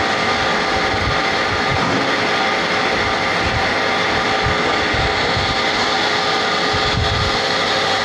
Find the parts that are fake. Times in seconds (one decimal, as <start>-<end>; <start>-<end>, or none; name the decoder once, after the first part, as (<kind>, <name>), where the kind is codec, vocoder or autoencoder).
none

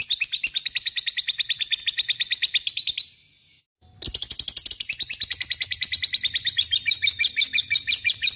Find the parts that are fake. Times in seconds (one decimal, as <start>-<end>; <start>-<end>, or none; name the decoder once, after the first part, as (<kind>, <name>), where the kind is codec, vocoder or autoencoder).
0.0-1.8 (vocoder, BigVGAN v2); 4.7-8.4

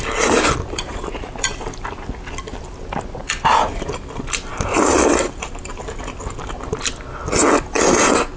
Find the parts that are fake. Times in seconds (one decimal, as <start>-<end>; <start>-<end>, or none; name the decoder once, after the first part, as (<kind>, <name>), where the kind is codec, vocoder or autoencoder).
none

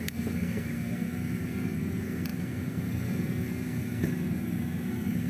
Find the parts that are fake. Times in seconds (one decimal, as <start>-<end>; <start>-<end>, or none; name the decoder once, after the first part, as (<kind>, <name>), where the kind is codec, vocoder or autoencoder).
0.0-5.3 (codec, SNAC)